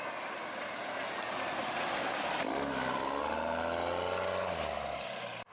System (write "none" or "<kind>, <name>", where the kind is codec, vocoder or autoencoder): none